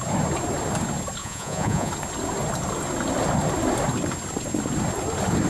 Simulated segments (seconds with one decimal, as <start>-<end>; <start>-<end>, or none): 1.2-1.9